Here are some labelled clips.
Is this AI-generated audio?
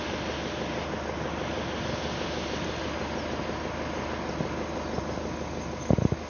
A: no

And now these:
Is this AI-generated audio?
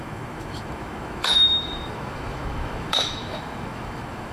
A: yes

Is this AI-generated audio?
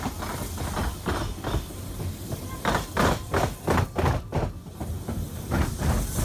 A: no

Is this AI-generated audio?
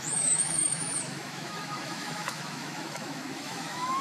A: yes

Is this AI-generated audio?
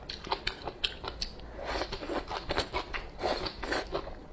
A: no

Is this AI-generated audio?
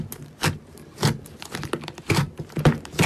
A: no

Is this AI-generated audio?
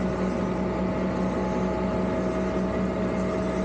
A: no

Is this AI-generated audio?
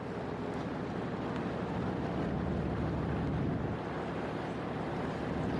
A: no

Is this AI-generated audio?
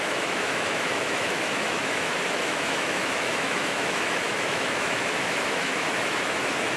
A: yes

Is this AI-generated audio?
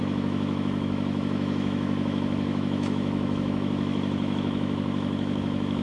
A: yes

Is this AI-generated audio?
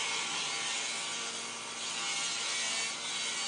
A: no